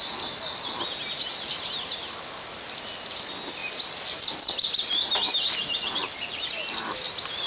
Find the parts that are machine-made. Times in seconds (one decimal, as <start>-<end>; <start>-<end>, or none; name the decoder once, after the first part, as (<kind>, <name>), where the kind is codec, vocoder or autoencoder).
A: 6.0-6.5 (vocoder, BigVGAN v2)